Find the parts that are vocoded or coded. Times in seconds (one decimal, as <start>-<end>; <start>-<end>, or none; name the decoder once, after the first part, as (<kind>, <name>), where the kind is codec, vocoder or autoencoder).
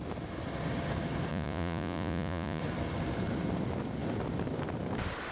1.3-2.6 (vocoder, Vocos)